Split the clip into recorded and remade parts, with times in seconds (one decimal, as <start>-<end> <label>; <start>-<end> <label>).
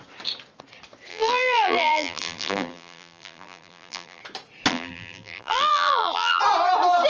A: 0.0-1.1 recorded; 1.1-4.2 remade; 4.2-4.7 recorded; 4.7-6.4 remade; 6.4-7.1 recorded